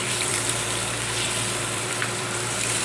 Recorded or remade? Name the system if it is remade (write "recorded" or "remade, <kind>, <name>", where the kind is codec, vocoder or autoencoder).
remade, vocoder, BigVGAN v2